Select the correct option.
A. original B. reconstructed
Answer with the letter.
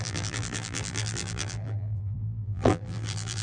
B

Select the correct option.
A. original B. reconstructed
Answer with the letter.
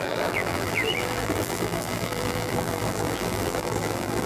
B